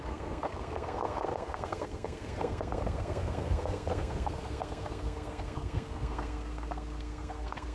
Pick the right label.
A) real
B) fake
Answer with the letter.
B